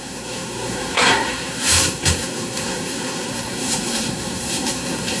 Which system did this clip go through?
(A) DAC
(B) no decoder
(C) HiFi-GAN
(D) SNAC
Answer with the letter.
D